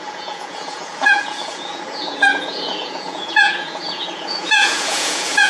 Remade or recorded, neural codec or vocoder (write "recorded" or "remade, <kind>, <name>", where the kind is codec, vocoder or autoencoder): remade, vocoder, Vocos